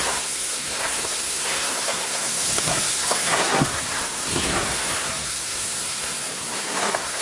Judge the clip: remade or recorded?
remade